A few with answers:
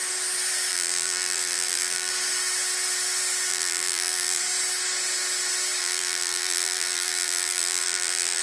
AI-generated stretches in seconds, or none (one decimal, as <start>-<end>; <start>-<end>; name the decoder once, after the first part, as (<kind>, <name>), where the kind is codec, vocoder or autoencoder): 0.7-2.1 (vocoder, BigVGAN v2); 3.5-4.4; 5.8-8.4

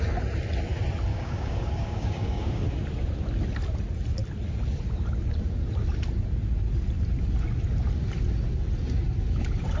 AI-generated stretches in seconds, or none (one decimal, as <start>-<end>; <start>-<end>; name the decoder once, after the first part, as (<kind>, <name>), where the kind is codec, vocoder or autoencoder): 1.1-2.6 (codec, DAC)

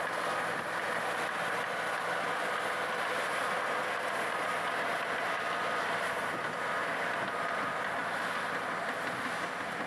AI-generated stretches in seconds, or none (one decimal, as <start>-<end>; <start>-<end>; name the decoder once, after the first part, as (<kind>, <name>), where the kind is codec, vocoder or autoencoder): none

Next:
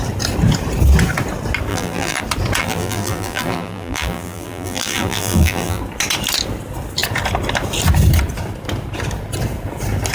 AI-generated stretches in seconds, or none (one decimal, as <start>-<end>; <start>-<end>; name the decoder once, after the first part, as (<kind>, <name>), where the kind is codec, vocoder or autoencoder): 1.7-2.2 (vocoder, BigVGAN v2); 2.6-5.8

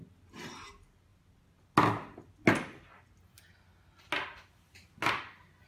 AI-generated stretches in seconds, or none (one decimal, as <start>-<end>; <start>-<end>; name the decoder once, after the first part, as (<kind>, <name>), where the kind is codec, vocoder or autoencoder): none